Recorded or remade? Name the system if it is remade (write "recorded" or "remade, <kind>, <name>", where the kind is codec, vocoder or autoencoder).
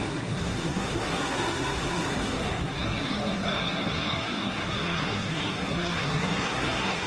remade, codec, SNAC